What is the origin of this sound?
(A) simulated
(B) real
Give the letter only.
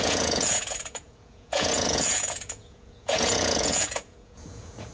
A